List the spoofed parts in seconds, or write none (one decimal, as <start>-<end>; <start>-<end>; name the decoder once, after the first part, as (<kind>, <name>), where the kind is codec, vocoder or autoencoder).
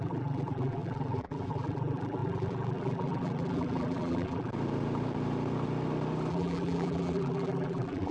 0.0-4.5 (vocoder, BigVGAN v2); 6.3-8.1